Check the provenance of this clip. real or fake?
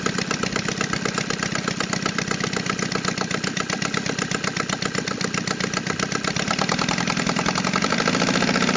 real